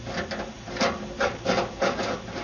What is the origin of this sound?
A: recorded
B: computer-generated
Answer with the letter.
A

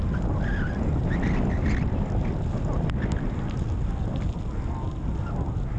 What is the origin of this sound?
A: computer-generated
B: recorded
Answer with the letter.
B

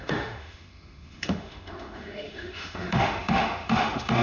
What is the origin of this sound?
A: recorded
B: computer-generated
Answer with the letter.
B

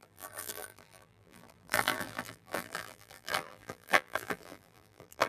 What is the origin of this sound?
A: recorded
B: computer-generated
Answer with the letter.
B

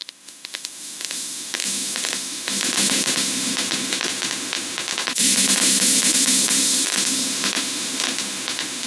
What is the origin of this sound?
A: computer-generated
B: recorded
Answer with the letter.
A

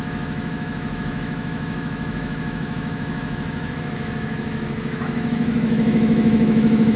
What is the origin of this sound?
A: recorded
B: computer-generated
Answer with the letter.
B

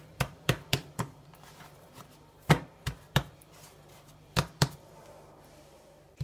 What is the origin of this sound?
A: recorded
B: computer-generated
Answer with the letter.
B